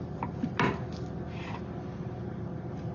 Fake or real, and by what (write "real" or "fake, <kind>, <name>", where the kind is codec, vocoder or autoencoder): real